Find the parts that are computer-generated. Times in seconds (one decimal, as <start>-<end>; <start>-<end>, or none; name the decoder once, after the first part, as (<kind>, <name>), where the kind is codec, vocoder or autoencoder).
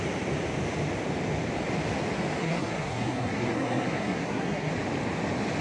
2.4-4.7 (codec, SNAC)